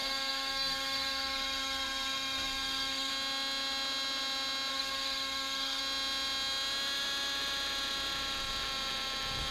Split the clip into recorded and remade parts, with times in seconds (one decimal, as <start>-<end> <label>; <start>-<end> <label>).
0.0-3.1 remade; 3.1-4.7 recorded; 4.7-5.8 remade; 5.8-9.5 recorded

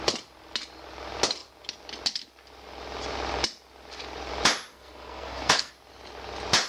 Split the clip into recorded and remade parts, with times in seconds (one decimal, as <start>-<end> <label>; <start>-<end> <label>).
0.0-4.7 recorded; 4.7-5.7 remade; 5.7-6.7 recorded

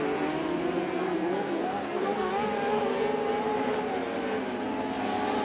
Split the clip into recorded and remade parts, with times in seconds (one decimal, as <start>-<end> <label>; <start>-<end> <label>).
0.0-0.8 recorded; 0.8-2.3 remade; 2.3-5.4 recorded